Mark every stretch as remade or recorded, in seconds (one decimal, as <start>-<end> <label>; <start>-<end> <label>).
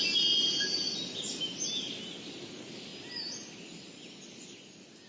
0.0-5.1 recorded